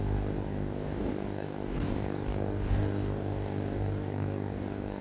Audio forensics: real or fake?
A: fake